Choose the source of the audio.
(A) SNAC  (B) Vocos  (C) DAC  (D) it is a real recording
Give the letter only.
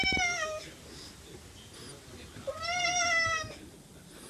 D